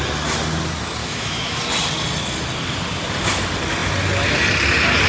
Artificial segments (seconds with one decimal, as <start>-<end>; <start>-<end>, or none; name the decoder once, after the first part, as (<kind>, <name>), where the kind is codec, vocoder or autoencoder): 1.0-1.6 (autoencoder, DAC-VAE)